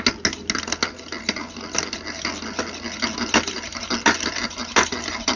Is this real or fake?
real